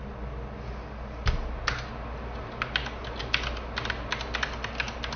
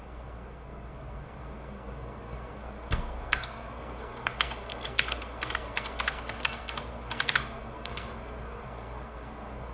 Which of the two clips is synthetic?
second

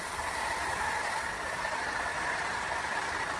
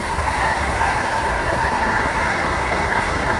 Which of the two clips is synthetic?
second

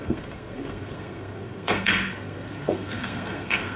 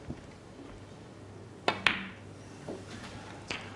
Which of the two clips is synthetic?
first